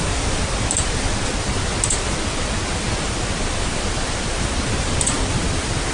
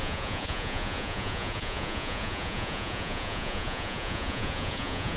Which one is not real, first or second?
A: second